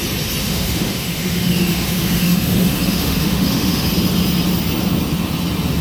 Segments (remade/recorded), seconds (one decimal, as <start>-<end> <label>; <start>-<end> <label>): 0.0-0.4 recorded; 0.4-3.9 remade; 3.9-5.8 recorded